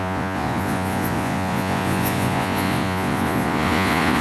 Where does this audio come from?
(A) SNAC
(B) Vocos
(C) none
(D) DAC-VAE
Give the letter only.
B